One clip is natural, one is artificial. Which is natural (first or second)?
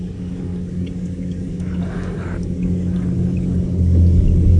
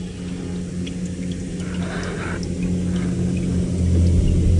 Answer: second